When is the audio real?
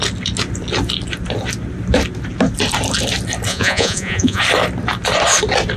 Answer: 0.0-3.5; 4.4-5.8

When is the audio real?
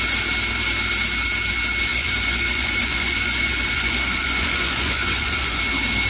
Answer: 0.0-1.9; 5.6-6.1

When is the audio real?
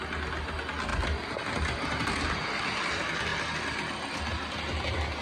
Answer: 0.0-5.2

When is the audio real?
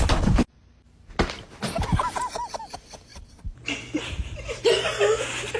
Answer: 0.0-5.6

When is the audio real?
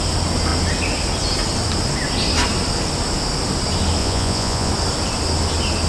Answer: 0.0-4.0; 4.7-5.9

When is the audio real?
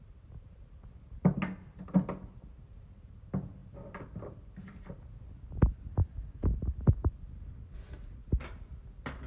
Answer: 0.0-9.3